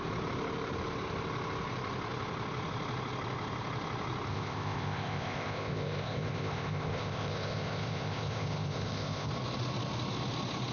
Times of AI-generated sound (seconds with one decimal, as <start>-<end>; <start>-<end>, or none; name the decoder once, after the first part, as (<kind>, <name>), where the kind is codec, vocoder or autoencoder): 4.3-9.3 (codec, ZipCodec)